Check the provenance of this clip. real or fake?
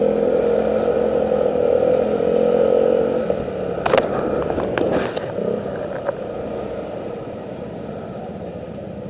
real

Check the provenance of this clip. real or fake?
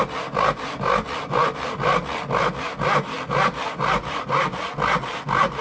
real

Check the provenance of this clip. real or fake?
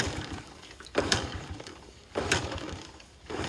fake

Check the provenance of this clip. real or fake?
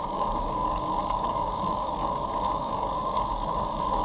fake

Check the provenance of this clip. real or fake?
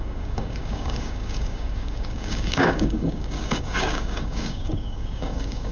fake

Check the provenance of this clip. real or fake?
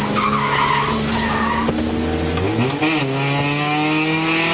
real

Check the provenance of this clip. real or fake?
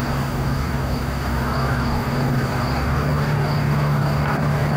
fake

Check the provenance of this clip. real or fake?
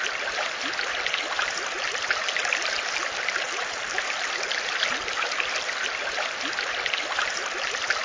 real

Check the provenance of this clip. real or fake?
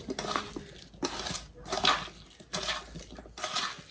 real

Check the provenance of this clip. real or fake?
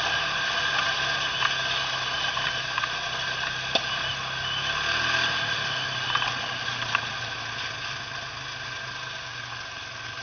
real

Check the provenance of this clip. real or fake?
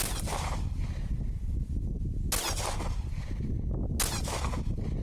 real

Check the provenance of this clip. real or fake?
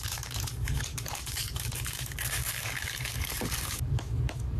fake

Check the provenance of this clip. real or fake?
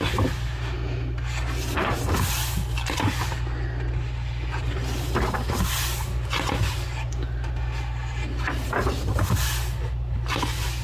real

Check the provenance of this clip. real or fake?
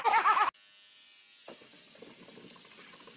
real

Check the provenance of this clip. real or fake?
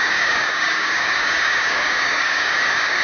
fake